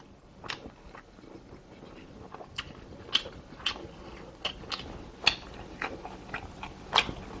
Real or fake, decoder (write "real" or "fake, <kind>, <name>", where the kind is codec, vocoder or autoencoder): real